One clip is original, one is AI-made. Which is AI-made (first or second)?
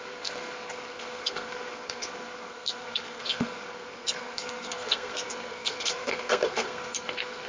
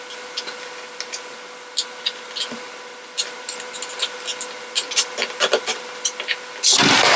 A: first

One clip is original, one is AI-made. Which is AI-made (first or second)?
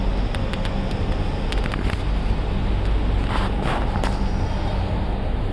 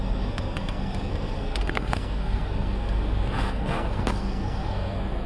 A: second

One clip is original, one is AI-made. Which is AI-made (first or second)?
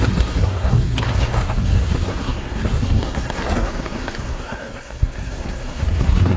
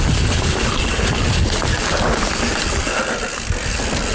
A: first